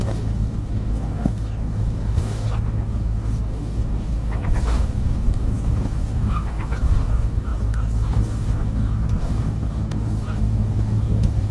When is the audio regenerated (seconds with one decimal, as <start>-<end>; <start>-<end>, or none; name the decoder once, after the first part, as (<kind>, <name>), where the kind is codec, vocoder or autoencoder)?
0.0-11.5 (codec, DAC)